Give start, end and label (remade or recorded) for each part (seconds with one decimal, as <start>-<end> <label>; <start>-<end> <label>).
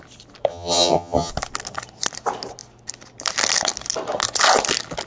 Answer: 0.0-0.5 recorded; 0.5-1.3 remade; 1.3-5.1 recorded